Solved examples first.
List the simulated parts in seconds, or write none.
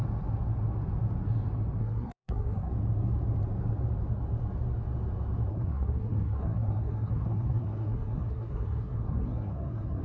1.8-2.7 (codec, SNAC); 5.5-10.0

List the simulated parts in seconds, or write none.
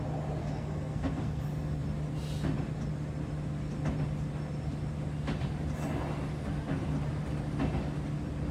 0.4-1.4 (codec, SNAC)